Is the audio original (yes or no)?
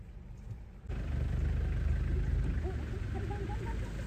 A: yes